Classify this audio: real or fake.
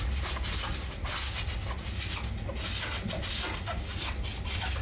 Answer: real